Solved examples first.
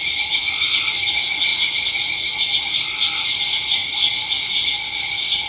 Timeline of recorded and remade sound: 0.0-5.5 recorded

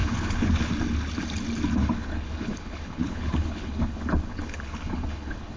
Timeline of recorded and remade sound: 0.0-0.7 remade; 0.7-1.8 recorded; 1.8-5.6 remade

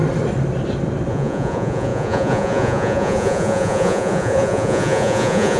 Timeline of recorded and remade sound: 0.0-1.1 recorded; 1.1-5.6 remade